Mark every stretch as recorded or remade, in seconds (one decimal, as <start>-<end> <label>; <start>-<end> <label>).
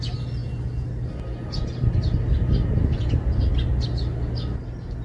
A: 0.0-5.0 recorded